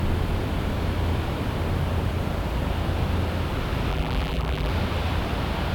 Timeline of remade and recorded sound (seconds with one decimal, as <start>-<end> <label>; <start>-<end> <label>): 0.0-3.9 recorded; 3.9-4.7 remade; 4.7-5.7 recorded